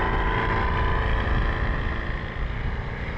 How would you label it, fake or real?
real